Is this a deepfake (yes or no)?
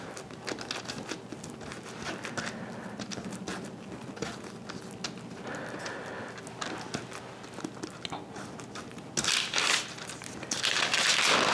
no